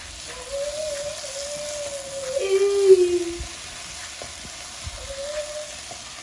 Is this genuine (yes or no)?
yes